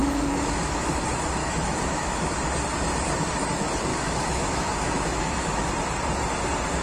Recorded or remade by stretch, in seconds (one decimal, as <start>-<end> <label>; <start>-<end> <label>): 0.0-0.9 remade; 0.9-1.4 recorded; 1.4-2.3 remade; 2.3-3.9 recorded; 3.9-5.7 remade; 5.7-6.8 recorded